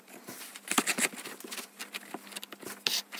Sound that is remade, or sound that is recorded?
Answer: recorded